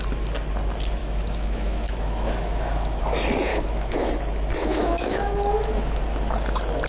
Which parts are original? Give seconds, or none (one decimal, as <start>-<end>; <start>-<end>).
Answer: 0.0-1.0; 3.0-3.5; 4.1-4.6; 6.0-6.9